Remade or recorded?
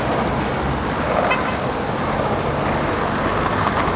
recorded